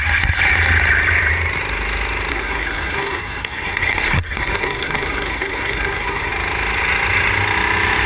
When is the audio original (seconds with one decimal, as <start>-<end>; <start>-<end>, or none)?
0.0-2.3; 6.3-8.1